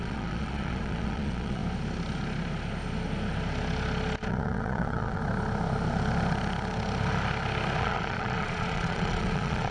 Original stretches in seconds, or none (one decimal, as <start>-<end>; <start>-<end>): 1.6-4.3; 5.2-7.8